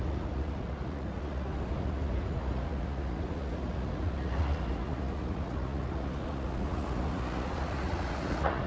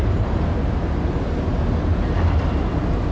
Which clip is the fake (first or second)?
first